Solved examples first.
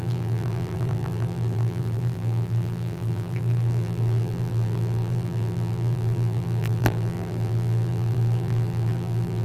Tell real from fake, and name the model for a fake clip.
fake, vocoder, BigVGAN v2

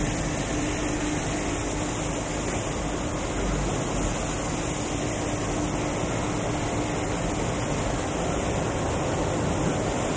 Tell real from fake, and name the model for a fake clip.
real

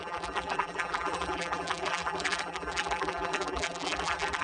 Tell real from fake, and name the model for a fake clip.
fake, vocoder, BigVGAN v2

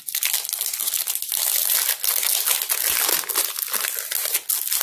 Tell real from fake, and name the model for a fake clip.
real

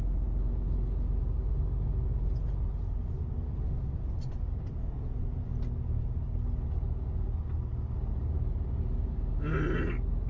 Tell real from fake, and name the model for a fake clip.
real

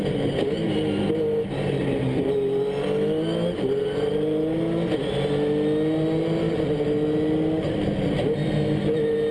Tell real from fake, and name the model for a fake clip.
real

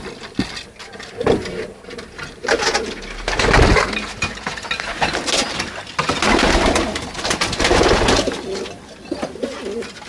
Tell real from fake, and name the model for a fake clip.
real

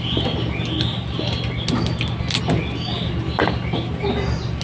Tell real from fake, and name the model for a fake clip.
real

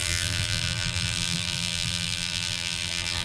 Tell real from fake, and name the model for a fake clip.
fake, vocoder, BigVGAN v2